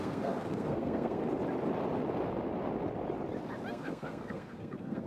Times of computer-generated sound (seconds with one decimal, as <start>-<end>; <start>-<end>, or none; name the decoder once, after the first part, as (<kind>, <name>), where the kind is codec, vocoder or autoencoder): 0.0-1.2 (codec, SNAC); 3.7-5.1